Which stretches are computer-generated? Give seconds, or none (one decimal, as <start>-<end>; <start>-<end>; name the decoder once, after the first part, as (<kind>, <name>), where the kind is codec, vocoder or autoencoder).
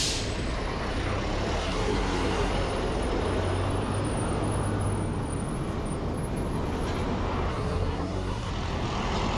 1.6-2.5 (codec, SNAC); 7.5-8.5